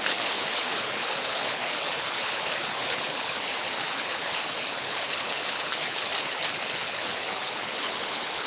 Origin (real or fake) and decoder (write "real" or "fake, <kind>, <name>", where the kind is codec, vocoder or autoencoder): fake, codec, HILCodec